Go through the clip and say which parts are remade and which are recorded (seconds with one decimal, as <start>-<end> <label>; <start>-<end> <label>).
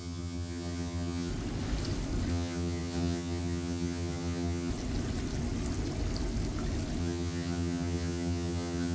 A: 0.0-1.3 remade; 1.3-2.3 recorded; 2.3-4.7 remade; 4.7-7.0 recorded; 7.0-8.9 remade